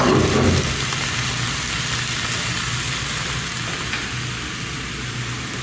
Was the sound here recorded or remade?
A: recorded